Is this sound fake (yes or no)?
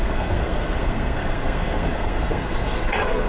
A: yes